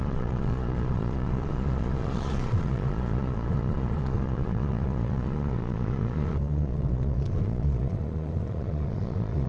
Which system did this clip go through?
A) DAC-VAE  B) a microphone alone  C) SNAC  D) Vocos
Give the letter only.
D